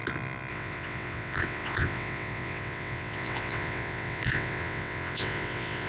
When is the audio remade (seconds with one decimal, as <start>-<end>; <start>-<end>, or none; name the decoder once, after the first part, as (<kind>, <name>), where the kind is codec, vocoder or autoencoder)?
0.5-5.9 (vocoder, WaveNeXt)